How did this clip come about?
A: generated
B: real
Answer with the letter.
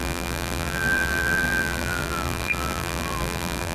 A